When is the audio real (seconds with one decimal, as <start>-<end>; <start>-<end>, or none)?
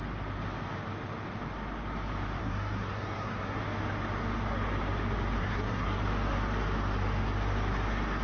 0.0-2.4; 3.6-5.4; 6.0-8.2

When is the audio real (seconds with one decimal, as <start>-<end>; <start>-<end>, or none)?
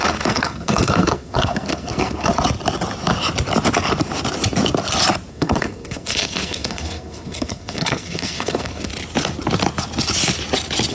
2.3-5.3; 8.9-10.9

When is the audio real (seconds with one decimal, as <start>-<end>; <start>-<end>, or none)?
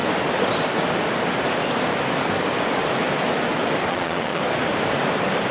0.0-3.9; 4.4-5.5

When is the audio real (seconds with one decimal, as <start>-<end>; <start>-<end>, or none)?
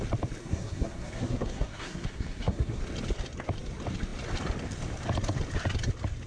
0.0-0.4; 2.8-6.3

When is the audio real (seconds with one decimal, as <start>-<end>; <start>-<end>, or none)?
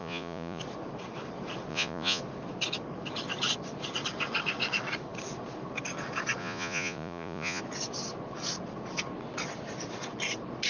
0.6-1.7; 2.2-6.4; 7.6-10.7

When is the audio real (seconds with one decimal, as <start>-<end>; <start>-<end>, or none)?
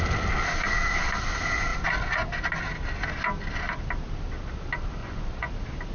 0.0-5.0; 5.5-5.9